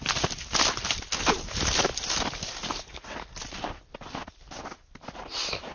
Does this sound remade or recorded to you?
recorded